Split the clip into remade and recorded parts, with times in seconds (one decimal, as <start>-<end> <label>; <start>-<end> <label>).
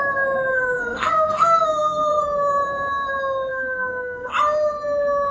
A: 0.0-0.5 recorded; 0.5-2.1 remade; 2.1-3.5 recorded; 3.5-4.3 remade; 4.3-5.3 recorded